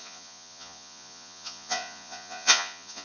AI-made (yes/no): yes